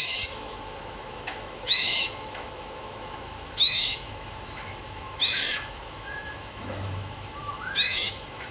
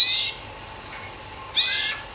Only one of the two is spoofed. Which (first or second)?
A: first